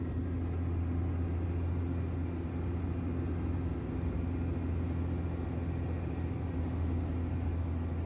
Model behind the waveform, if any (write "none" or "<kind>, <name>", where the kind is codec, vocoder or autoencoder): none